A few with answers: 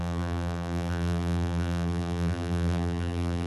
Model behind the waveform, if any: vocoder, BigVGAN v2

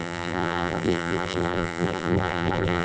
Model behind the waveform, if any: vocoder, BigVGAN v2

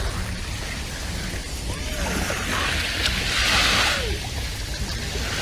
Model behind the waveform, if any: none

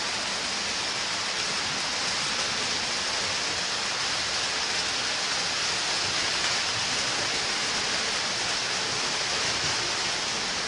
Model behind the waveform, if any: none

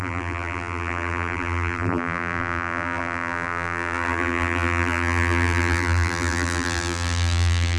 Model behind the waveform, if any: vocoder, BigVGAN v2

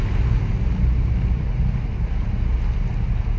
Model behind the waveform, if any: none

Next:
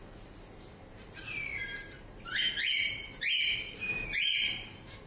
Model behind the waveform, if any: vocoder, BigVGAN v2